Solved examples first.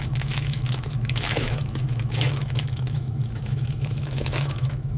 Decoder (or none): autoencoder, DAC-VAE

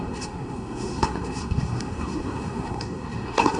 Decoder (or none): codec, SNAC